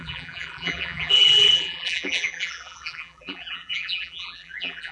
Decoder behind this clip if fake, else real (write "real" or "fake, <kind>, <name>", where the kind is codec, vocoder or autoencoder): fake, vocoder, BigVGAN v2